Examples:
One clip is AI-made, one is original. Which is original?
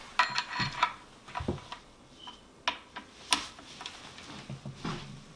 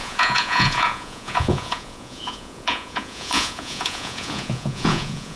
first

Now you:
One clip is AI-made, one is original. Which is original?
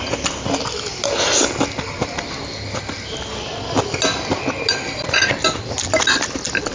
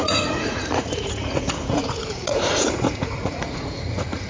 first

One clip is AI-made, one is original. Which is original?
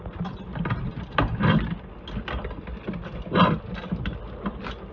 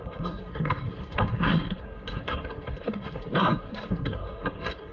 first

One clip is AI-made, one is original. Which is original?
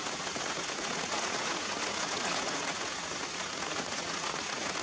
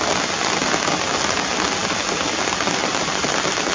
second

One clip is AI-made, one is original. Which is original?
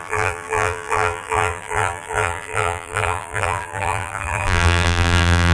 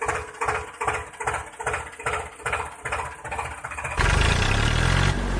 second